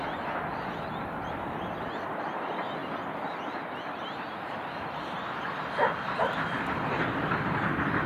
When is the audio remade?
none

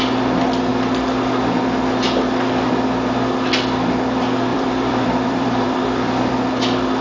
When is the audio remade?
4.5-6.3 (vocoder, BigVGAN v2)